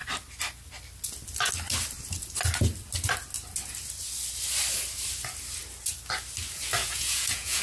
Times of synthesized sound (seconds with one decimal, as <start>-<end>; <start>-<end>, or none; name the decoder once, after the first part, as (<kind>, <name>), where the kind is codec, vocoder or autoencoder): 6.8-7.6 (vocoder, Vocos)